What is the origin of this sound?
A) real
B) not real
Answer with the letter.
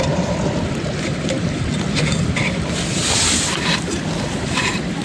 A